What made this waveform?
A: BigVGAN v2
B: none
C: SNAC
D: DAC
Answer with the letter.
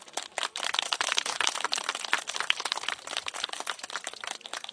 A